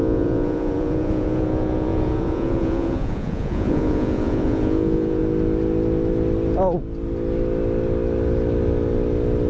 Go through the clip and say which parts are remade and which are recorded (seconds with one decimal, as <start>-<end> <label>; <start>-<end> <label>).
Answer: 0.0-5.2 remade; 5.2-9.5 recorded